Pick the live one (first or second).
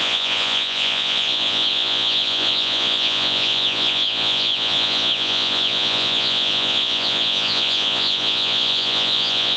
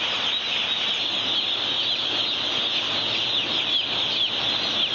second